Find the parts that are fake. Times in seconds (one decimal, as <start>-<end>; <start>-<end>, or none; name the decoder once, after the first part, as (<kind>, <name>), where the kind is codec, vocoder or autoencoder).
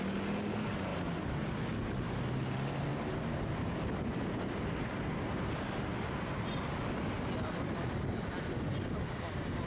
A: none